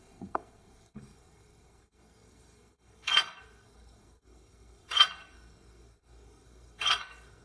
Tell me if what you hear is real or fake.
fake